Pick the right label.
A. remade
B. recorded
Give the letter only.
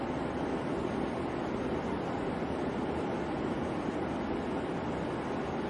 B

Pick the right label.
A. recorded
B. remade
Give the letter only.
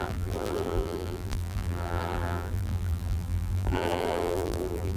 B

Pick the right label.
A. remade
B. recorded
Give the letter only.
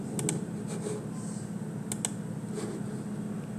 B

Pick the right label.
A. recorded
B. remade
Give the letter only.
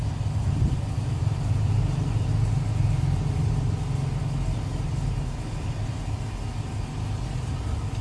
A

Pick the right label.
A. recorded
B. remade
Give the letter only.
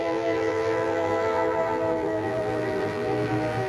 B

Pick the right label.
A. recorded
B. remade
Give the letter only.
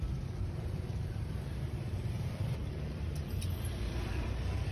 B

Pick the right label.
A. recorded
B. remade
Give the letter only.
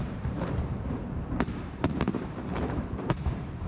B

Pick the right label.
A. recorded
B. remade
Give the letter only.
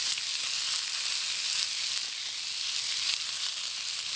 A